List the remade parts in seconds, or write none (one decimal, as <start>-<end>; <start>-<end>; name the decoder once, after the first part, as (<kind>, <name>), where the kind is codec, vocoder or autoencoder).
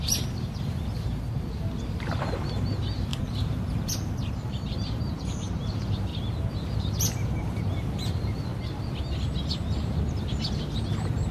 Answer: 0.0-6.1 (vocoder, BigVGAN v2); 6.8-8.5; 10.2-11.3